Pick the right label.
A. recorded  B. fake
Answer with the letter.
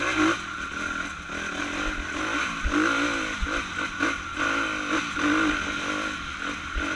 A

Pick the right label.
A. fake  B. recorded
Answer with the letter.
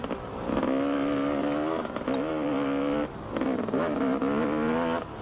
B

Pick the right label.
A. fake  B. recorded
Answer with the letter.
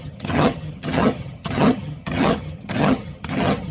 A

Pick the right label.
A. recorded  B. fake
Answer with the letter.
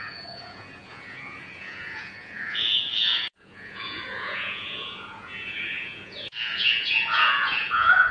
B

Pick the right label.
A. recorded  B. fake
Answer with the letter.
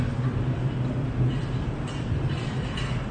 A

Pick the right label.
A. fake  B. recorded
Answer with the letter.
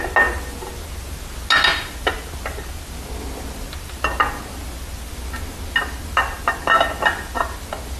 B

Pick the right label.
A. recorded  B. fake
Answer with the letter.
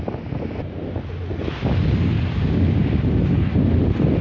A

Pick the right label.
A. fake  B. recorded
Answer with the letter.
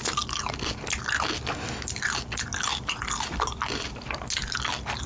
B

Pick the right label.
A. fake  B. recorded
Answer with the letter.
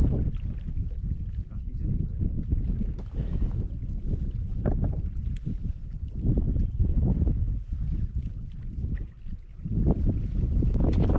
B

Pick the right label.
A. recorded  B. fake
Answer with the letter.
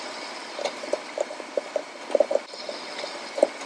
A